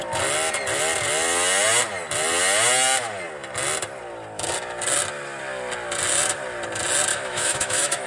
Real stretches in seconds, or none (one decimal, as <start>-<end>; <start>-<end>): 0.0-7.1